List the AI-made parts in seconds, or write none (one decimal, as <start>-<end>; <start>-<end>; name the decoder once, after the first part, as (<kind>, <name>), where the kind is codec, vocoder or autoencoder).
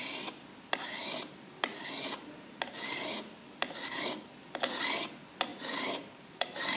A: 5.5-6.8 (vocoder, BigVGAN v2)